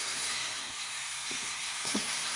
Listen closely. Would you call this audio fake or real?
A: fake